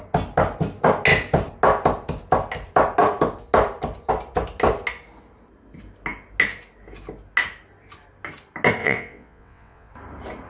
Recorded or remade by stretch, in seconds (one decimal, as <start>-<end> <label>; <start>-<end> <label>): 0.0-8.8 recorded; 8.8-9.9 remade; 9.9-10.5 recorded